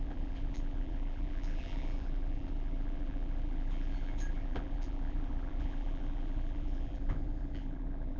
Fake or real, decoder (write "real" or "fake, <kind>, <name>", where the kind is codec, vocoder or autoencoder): fake, vocoder, BigVGAN v2